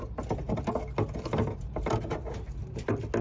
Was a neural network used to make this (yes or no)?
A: no